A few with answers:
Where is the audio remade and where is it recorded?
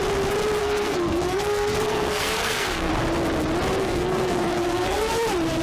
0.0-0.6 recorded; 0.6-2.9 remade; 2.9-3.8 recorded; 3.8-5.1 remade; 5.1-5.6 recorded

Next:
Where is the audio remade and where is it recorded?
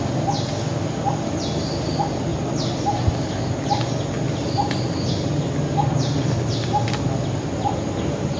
0.0-8.4 recorded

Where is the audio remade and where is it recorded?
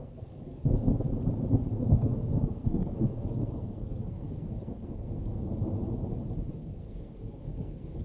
0.0-0.9 remade; 0.9-1.7 recorded; 1.7-5.4 remade; 5.4-6.5 recorded; 6.5-8.0 remade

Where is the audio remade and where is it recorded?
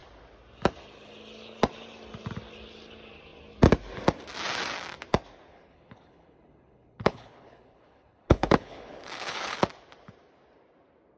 0.0-5.5 recorded; 5.5-9.6 remade; 9.6-11.2 recorded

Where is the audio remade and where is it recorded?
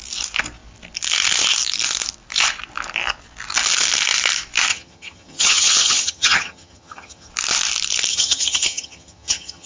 0.0-4.7 recorded; 4.7-7.3 remade; 7.3-8.1 recorded; 8.1-9.7 remade